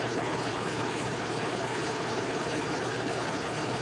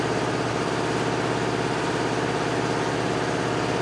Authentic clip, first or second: second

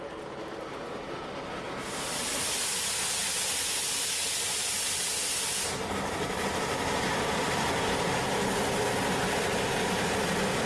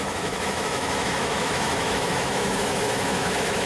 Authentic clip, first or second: first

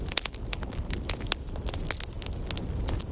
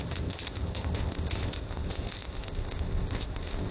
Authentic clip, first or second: first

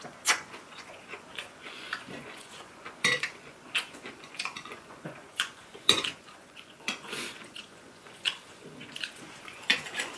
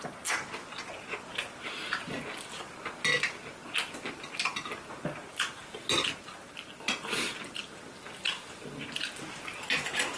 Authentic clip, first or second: second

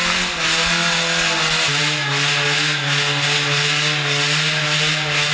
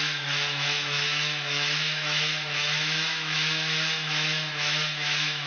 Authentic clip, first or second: first